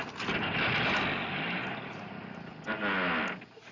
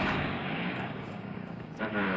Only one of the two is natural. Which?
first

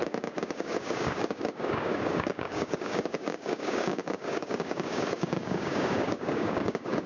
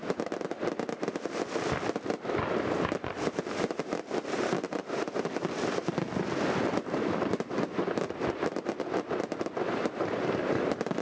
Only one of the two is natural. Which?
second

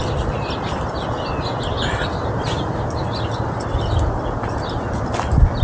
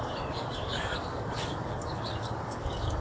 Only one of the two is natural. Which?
first